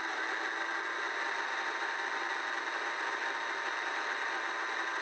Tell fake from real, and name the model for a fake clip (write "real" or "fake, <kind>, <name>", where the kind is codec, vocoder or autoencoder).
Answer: real